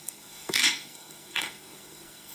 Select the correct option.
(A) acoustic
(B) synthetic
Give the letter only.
B